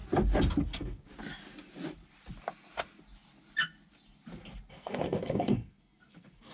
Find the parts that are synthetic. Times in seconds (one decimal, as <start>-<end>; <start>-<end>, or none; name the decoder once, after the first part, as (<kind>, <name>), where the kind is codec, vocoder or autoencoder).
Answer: 0.6-1.1 (codec, SNAC); 4.7-6.5